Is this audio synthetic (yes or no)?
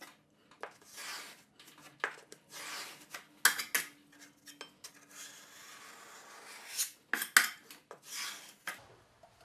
no